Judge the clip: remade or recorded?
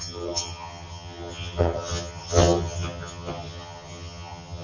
remade